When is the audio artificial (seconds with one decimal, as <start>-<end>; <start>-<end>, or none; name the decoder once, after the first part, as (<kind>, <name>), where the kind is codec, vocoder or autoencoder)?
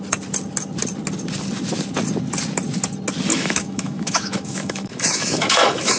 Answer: 3.3-6.0 (autoencoder, DAC-VAE)